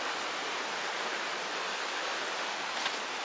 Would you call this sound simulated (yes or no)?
no